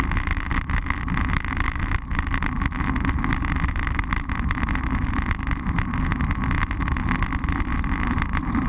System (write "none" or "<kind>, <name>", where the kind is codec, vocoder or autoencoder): none